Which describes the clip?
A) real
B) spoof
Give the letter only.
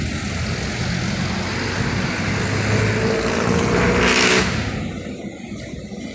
A